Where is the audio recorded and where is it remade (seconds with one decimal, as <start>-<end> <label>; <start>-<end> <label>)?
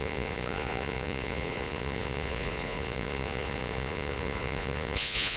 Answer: 0.0-5.4 remade